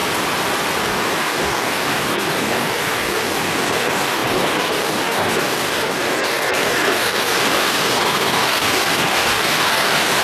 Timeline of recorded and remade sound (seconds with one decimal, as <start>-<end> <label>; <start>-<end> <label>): 0.0-0.8 recorded; 0.8-10.2 remade